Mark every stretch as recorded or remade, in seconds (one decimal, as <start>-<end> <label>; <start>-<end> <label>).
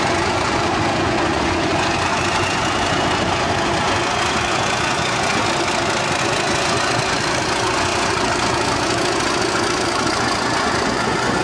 0.0-5.4 remade; 5.4-6.2 recorded; 6.2-11.4 remade